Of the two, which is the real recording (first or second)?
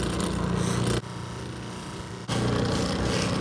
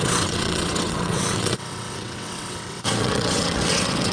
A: first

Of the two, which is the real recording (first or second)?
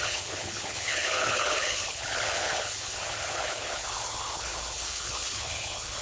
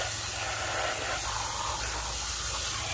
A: second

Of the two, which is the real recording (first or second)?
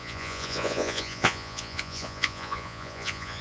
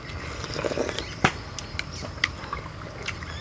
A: second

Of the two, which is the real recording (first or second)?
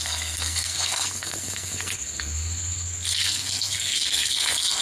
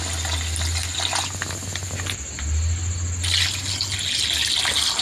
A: second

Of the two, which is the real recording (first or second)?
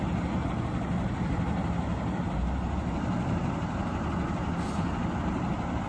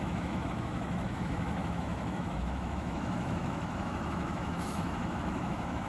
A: first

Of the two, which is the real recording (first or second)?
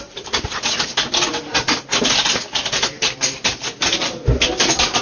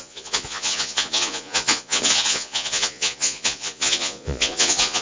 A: first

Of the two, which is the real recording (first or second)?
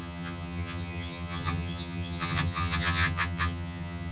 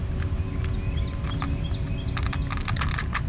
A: second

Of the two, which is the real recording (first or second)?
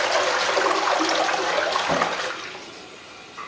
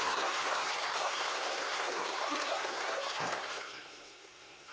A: first